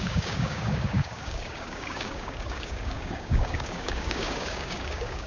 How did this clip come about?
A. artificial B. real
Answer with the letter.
A